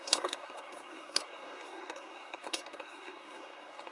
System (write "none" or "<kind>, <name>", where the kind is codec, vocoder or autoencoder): codec, SNAC